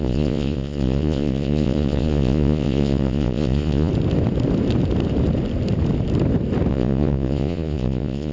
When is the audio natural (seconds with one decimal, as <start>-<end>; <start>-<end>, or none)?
3.9-6.7